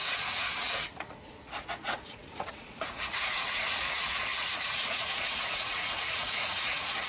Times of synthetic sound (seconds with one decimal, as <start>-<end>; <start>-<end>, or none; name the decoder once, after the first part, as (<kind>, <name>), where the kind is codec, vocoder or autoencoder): 0.0-7.1 (vocoder, Vocos)